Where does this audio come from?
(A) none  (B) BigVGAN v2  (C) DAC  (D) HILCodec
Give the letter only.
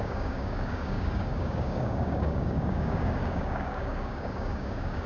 C